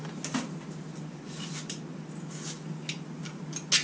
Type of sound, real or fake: real